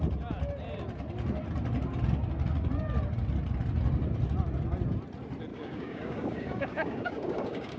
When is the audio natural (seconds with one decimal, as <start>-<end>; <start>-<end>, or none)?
0.0-5.5